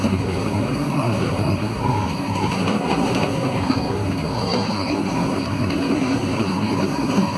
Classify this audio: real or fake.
fake